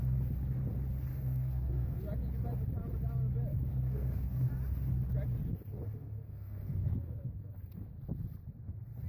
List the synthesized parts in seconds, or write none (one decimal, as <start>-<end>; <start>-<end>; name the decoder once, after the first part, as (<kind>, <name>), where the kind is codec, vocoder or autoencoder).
1.1-2.0 (codec, SNAC); 3.7-4.5; 6.0-7.5